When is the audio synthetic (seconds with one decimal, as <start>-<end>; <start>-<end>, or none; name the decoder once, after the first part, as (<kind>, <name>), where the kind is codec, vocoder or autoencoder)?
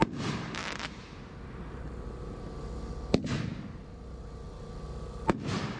none